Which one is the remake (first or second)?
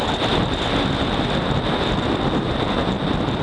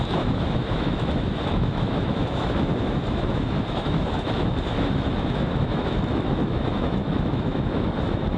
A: second